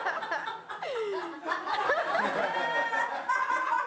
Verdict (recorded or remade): recorded